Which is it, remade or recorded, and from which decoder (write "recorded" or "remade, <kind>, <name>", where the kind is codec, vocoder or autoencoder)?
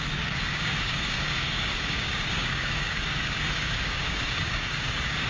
remade, codec, DAC